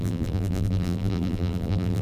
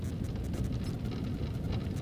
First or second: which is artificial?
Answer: first